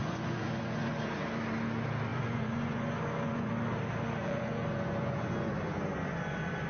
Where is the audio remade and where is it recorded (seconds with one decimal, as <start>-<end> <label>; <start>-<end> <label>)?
0.0-1.0 remade; 1.0-2.1 recorded; 2.1-3.5 remade; 3.5-4.2 recorded; 4.2-6.7 remade